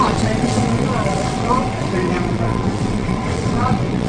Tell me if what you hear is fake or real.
fake